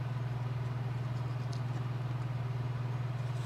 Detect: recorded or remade recorded